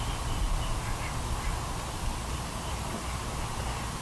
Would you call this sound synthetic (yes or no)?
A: no